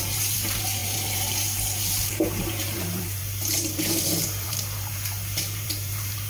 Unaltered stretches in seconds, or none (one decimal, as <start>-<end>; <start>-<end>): none